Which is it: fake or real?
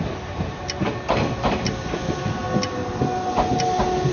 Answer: real